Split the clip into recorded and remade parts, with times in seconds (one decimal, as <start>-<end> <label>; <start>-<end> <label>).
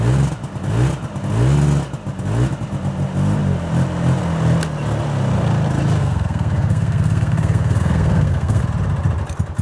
0.0-6.0 recorded; 6.0-8.6 remade; 8.6-9.6 recorded